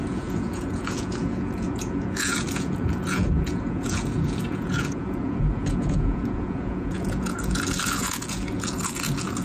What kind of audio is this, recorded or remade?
remade